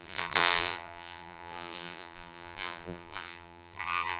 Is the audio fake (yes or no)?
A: yes